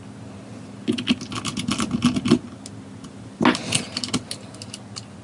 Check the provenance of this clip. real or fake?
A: real